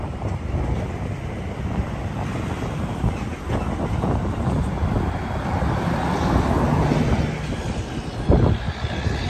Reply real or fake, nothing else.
real